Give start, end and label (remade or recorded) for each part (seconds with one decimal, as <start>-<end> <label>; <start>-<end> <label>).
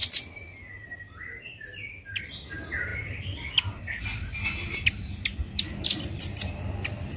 0.0-7.2 recorded